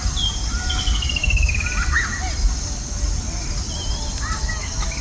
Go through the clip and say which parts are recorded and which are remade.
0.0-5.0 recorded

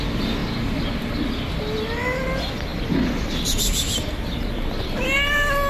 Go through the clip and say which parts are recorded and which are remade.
0.0-2.7 recorded; 2.7-3.6 remade; 3.6-5.7 recorded